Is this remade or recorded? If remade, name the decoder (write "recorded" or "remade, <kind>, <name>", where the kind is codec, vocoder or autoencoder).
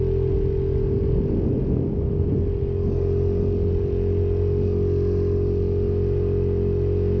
recorded